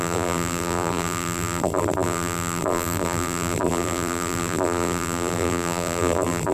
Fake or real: fake